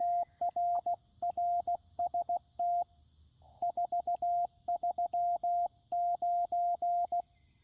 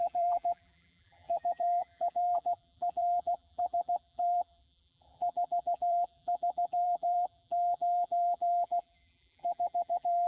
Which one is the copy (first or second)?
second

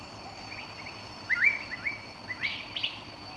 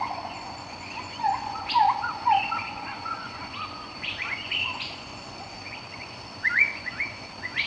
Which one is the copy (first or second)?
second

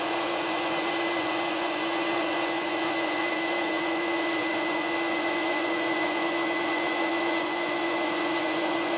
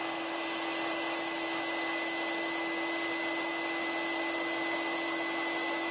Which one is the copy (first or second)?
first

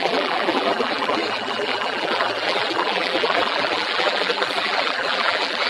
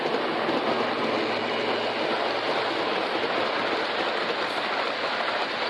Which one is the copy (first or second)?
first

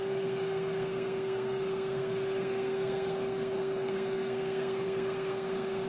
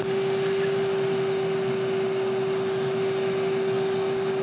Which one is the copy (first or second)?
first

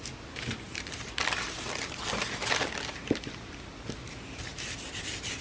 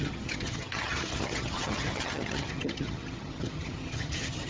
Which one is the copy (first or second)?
second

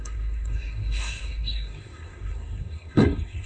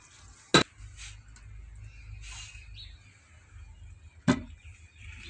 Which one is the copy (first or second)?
first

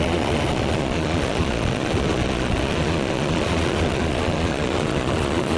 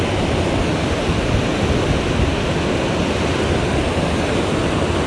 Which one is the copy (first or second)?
first